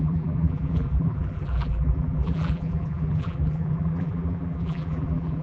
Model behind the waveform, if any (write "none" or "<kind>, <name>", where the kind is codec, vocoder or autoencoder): vocoder, BigVGAN v2